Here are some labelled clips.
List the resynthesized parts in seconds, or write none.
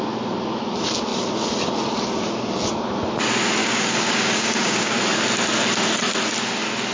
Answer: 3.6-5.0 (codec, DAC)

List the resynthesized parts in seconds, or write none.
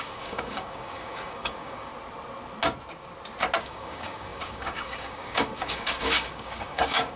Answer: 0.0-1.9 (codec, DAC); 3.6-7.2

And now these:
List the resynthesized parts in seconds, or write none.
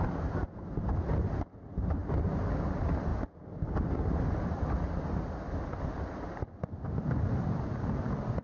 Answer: none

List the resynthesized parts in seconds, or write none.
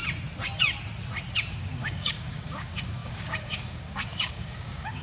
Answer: 1.5-5.0 (codec, DAC)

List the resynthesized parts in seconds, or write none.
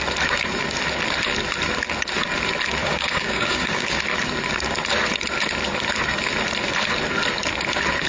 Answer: 2.8-4.0 (codec, DAC)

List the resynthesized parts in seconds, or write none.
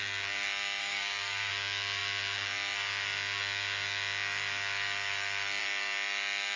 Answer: 0.8-1.5 (codec, DAC)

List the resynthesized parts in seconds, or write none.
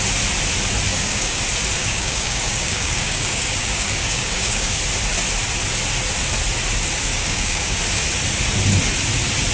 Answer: 0.9-1.4 (codec, DAC); 1.8-4.8; 7.1-7.8